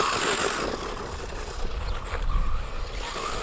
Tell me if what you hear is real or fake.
real